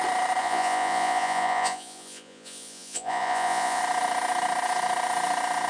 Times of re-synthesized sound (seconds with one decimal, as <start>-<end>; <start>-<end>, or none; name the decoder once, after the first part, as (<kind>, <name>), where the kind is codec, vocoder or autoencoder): 0.4-3.8 (vocoder, Vocos)